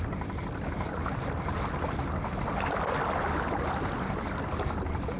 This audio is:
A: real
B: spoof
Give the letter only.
A